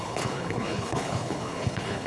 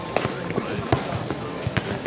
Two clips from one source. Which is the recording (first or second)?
second